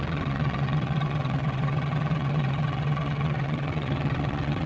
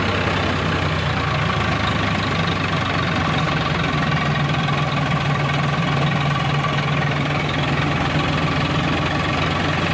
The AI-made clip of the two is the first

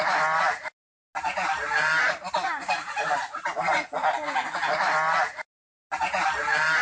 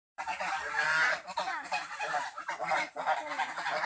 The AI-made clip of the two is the second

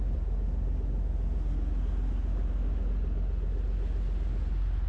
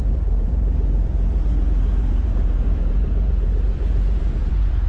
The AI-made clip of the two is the second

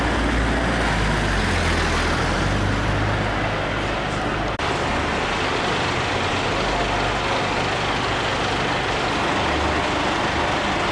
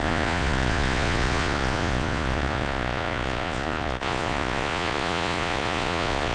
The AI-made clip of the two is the second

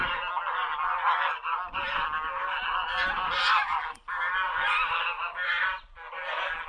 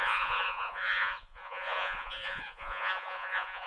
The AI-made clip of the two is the second